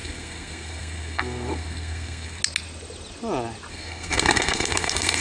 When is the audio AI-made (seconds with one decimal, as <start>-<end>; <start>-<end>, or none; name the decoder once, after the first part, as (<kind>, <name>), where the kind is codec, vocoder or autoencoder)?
0.0-2.4 (codec, SNAC); 3.7-5.2